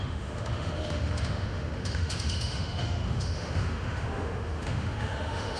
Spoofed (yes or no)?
yes